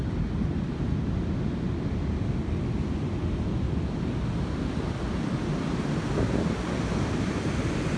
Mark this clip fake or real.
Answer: real